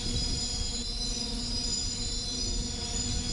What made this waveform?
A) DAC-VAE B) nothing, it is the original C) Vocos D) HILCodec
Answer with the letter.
B